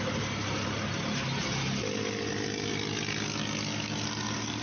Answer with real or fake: real